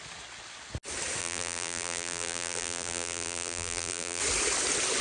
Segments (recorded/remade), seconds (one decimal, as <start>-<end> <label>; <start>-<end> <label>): 0.0-1.2 recorded; 1.2-4.2 remade; 4.2-5.0 recorded